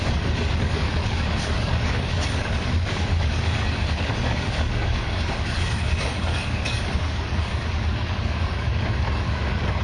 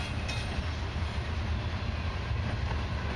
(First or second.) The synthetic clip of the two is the first